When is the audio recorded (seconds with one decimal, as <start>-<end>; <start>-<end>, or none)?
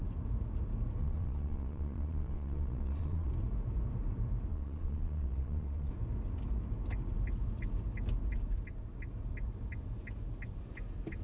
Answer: 0.0-1.0; 3.3-4.5; 5.9-11.2